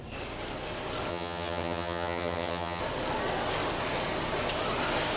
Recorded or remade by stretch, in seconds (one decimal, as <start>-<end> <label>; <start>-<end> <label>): 0.0-1.1 recorded; 1.1-2.8 remade; 2.8-5.2 recorded